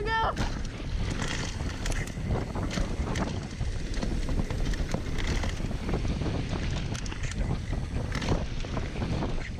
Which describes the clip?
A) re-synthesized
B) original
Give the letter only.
B